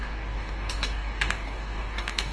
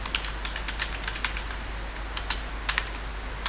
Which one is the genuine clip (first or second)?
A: second